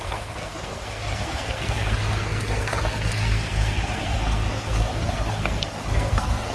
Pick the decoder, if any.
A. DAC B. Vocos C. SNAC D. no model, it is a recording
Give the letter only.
C